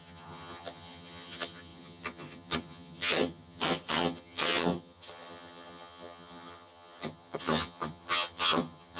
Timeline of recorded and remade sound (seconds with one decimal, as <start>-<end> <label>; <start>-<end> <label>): 0.0-9.0 remade